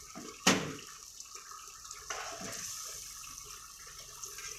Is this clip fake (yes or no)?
no